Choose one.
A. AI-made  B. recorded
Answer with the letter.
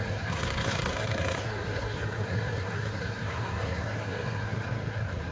A